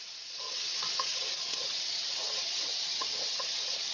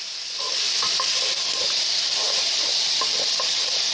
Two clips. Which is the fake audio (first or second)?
first